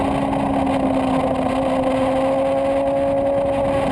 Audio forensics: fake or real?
real